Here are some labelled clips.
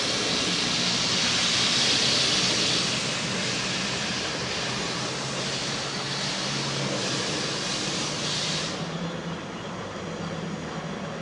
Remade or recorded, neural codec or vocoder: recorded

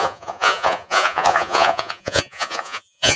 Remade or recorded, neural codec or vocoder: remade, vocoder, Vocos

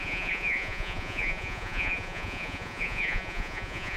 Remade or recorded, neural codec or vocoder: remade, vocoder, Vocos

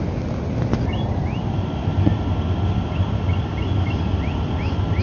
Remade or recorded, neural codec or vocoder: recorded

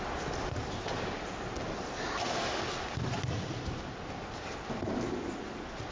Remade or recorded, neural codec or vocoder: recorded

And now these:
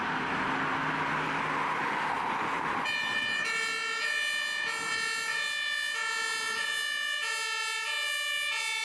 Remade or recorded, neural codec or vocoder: recorded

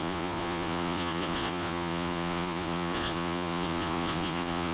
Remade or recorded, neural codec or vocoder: remade, vocoder, Vocos